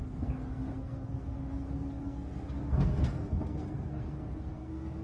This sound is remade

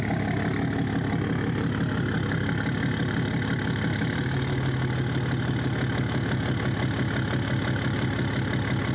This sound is recorded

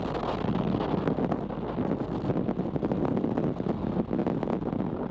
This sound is recorded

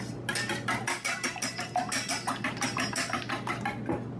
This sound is recorded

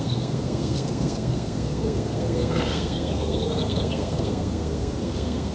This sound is remade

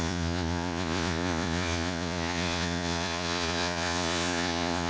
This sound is remade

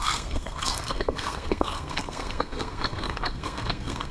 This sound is remade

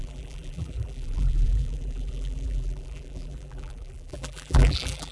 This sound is remade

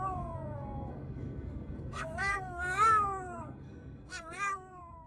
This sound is remade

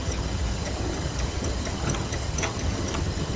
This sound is remade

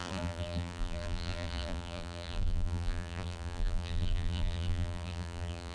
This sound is remade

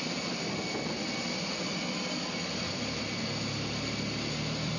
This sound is recorded